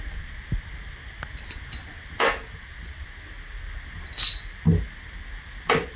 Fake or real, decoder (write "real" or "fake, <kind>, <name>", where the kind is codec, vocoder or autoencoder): real